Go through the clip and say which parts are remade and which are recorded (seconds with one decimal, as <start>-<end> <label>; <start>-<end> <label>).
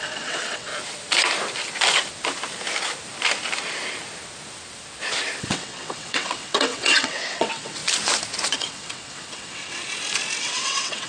0.0-0.7 remade; 0.7-5.4 recorded; 5.4-7.8 remade; 7.8-8.5 recorded; 8.5-9.8 remade; 9.8-10.4 recorded; 10.4-11.1 remade